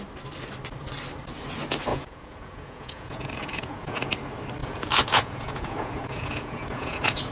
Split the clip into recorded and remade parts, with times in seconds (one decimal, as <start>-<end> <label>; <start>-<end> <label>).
0.0-1.9 recorded; 1.9-4.1 remade; 4.1-4.6 recorded; 4.6-7.3 remade

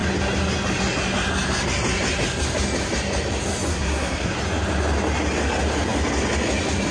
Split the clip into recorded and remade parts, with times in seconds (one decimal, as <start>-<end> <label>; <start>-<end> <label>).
0.0-3.7 recorded; 3.7-4.4 remade; 4.4-6.9 recorded

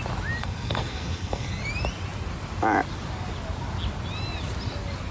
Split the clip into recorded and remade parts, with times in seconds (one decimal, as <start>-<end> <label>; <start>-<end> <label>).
0.0-0.4 recorded; 0.4-1.6 remade; 1.6-5.1 recorded

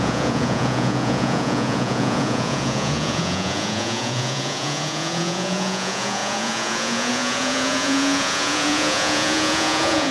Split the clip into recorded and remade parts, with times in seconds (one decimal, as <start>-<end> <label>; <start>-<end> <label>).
0.0-10.1 remade